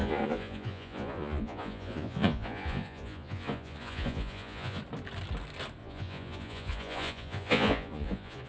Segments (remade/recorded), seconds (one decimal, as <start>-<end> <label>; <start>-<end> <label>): 0.0-4.8 remade; 4.8-5.8 recorded; 5.8-8.5 remade